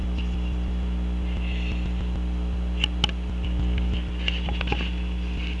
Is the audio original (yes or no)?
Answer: yes